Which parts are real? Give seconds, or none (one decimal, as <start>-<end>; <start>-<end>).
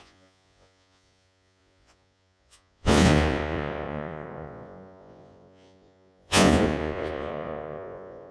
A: none